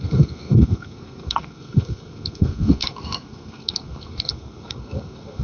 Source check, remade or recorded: remade